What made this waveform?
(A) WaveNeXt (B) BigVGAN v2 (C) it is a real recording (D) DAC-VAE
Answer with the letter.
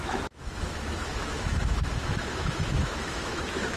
D